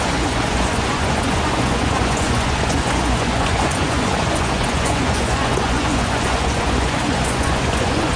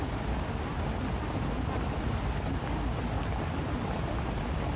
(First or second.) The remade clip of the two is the first